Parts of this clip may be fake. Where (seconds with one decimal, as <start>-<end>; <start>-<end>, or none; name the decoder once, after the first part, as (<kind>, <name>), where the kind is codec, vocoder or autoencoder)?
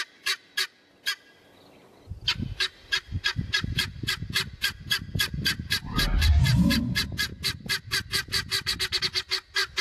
2.8-6.8 (vocoder, BigVGAN v2)